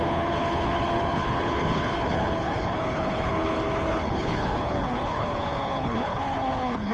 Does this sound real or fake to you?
fake